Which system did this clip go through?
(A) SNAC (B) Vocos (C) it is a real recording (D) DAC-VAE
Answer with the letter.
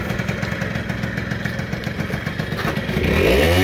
C